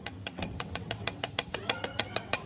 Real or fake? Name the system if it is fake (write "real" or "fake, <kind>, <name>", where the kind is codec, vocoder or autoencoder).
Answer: fake, vocoder, WaveNeXt